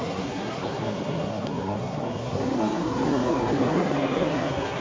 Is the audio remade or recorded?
remade